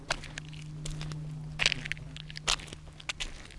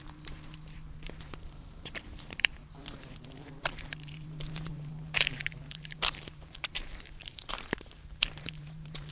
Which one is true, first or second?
first